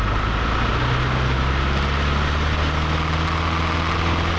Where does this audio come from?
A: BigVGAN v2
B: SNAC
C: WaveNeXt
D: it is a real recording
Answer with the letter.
D